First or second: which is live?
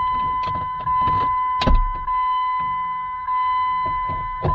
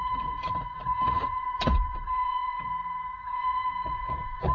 first